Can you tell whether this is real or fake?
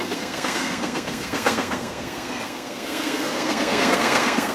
fake